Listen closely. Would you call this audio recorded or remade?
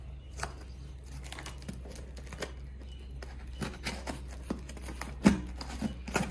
recorded